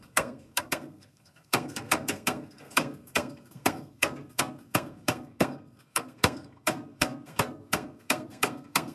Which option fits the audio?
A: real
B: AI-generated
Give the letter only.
B